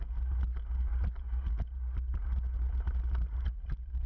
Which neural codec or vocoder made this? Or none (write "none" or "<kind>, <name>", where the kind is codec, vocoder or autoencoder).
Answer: none